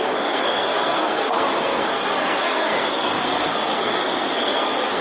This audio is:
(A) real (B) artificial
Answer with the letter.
B